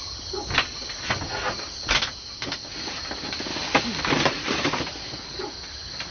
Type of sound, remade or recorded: recorded